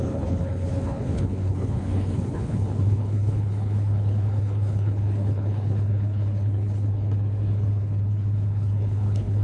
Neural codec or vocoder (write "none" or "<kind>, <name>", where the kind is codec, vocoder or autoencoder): codec, HILCodec